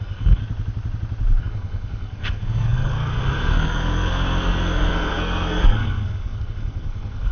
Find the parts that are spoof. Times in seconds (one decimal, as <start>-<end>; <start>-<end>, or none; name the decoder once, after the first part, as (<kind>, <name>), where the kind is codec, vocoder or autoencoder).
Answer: 0.0-0.4 (codec, SNAC); 1.4-7.3